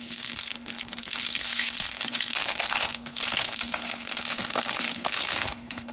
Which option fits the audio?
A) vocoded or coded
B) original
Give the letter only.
A